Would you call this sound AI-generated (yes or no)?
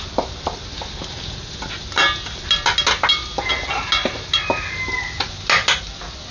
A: no